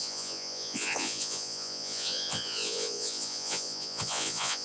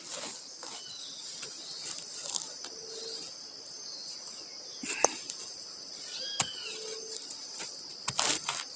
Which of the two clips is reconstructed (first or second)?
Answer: first